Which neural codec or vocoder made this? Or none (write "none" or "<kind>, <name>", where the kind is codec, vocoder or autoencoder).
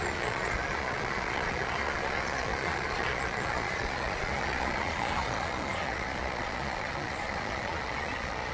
vocoder, Vocos